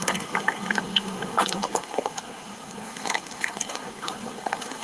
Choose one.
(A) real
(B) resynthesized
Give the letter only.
B